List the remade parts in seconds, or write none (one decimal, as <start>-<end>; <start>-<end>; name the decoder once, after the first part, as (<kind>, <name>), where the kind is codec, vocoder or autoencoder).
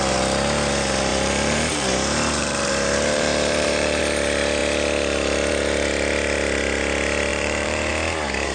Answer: 1.1-4.0 (vocoder, BigVGAN v2); 7.3-7.9